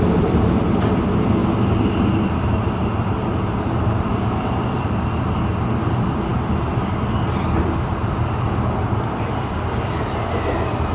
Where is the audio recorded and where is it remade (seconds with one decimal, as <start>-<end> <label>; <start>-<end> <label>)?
0.0-10.9 recorded